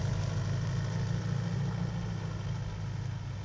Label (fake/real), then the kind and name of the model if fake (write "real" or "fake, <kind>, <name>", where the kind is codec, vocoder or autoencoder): real